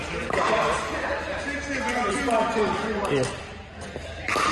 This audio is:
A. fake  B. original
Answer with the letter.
B